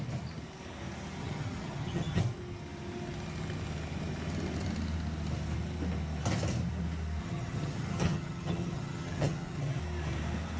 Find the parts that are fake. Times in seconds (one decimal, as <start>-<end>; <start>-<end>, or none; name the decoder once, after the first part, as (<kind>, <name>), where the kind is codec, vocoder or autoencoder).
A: 1.2-2.2 (vocoder, HiFi-GAN); 7.2-9.8